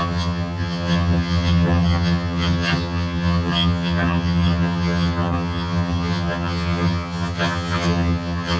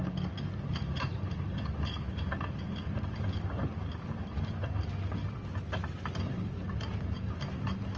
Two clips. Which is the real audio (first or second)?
second